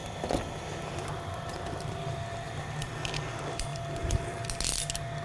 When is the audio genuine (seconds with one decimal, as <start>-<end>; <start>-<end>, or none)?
3.1-3.7; 4.4-5.2